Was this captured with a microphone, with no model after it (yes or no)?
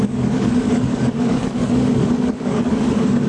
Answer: no